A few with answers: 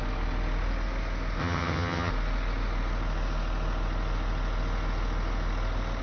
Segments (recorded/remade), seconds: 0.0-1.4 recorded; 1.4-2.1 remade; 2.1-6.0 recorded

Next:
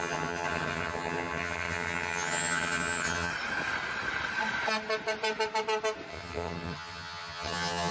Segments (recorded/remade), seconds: 0.0-3.3 remade; 3.3-6.1 recorded; 6.1-7.9 remade

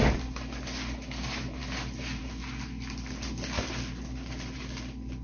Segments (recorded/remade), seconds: 0.0-5.2 recorded

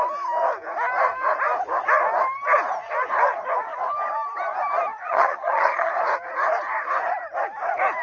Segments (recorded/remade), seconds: 0.0-4.9 recorded; 4.9-5.9 remade; 5.9-8.0 recorded

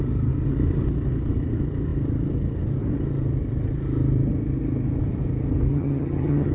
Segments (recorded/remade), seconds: 0.0-5.7 recorded; 5.7-6.5 remade

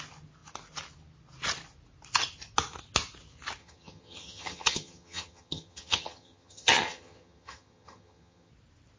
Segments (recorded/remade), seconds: 0.0-3.6 recorded; 3.6-8.5 remade; 8.5-9.0 recorded